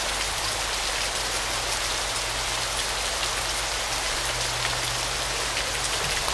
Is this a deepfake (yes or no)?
no